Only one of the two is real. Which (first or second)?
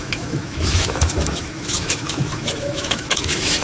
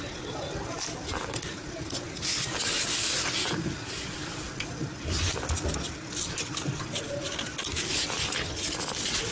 second